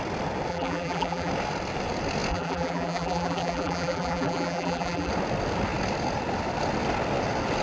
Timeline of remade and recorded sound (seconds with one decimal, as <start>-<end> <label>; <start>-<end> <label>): 0.0-0.5 recorded; 0.5-1.3 remade; 1.3-2.3 recorded; 2.3-5.1 remade; 5.1-7.6 recorded